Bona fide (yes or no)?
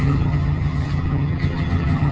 no